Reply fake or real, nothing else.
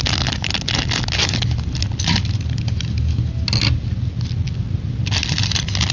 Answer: real